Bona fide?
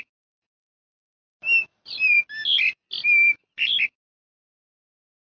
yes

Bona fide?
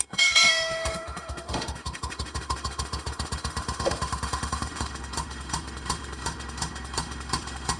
no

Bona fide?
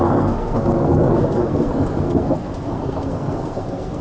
no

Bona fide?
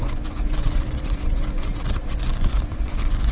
no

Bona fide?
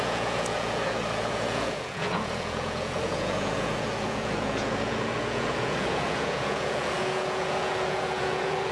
no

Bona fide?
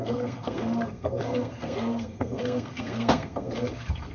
no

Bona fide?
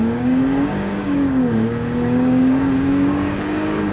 no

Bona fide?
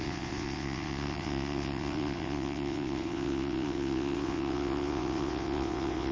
no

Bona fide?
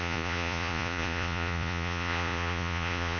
no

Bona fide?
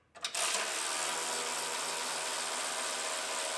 yes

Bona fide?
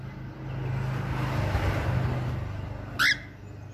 yes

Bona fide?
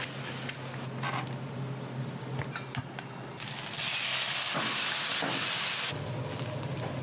yes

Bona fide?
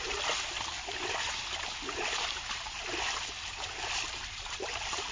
yes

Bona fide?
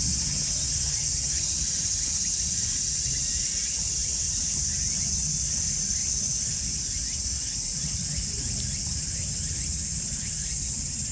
yes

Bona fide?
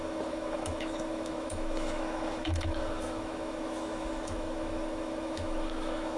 no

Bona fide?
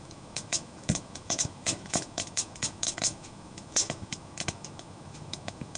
no